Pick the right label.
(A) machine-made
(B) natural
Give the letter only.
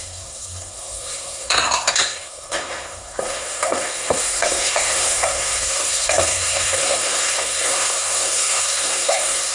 A